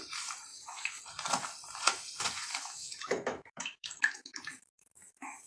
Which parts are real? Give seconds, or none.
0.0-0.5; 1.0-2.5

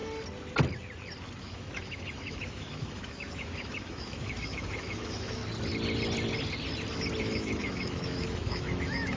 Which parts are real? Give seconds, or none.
0.0-1.4; 5.4-7.2

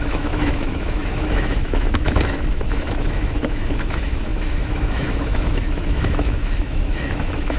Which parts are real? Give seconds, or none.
none